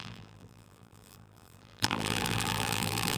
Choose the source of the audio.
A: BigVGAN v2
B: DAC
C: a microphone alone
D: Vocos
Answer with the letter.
A